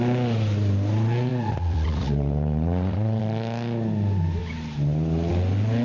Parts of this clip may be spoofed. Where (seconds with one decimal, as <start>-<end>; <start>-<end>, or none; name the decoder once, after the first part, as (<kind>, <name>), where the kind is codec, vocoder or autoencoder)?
1.3-3.2 (vocoder, Vocos)